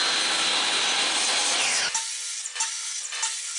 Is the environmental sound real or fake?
real